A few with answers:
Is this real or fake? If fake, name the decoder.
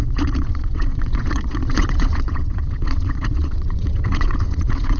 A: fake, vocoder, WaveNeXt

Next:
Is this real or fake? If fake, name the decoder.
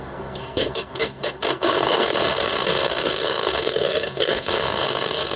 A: fake, codec, SNAC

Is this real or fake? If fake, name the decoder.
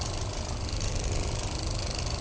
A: real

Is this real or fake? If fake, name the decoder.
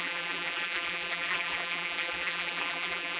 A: fake, vocoder, BigVGAN v2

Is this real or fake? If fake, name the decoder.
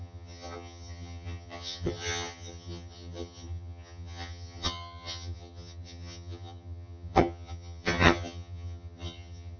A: fake, vocoder, HiFi-GAN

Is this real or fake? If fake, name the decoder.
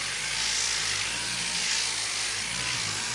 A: real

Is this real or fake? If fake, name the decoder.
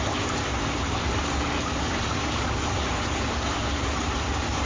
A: fake, vocoder, BigVGAN v2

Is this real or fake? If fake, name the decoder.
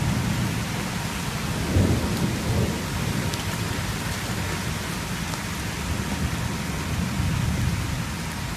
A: real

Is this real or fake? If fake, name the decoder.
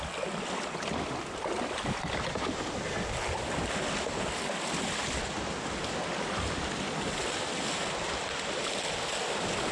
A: real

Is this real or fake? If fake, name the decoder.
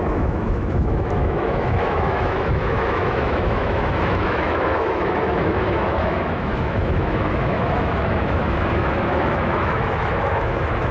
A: fake, autoencoder, DAC-VAE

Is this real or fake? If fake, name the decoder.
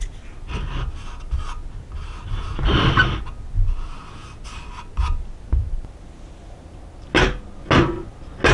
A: real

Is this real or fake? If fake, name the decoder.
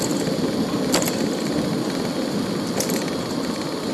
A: fake, vocoder, BigVGAN v2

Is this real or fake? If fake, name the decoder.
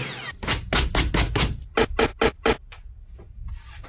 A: real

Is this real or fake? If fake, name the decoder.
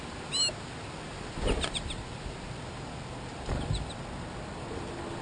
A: real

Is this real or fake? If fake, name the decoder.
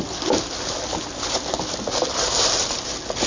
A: real